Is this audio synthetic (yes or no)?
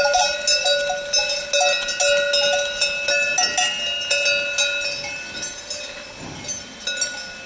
no